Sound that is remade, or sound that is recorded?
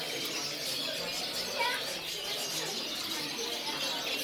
recorded